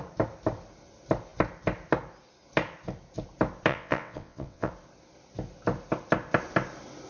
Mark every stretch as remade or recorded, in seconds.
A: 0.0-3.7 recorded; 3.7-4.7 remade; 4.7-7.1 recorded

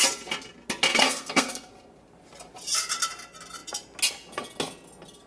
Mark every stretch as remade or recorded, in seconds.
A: 0.0-0.9 recorded; 0.9-1.7 remade; 1.7-5.3 recorded